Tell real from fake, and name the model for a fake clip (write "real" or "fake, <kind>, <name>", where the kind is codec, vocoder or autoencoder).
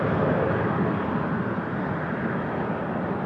real